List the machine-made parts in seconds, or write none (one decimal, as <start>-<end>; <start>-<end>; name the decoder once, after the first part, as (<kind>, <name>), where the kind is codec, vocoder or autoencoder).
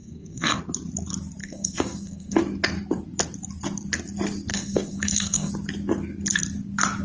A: 0.0-0.6 (codec, SNAC); 1.4-2.4; 4.5-5.5